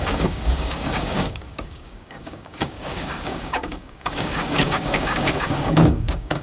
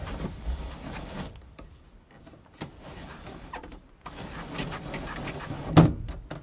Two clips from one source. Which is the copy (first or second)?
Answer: first